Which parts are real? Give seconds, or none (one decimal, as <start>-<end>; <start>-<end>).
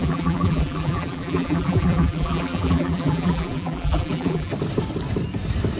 4.5-5.8